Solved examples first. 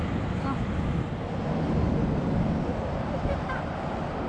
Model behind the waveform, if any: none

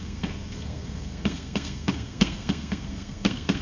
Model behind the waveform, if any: codec, SNAC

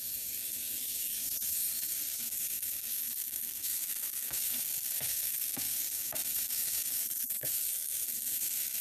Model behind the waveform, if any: codec, SNAC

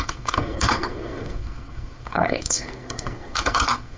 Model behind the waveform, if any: codec, SNAC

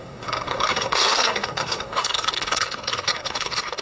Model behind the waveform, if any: codec, SNAC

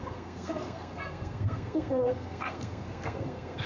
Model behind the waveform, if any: codec, SNAC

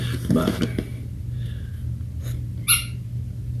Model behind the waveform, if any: none